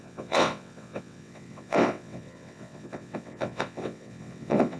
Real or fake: fake